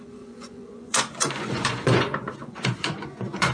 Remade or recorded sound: remade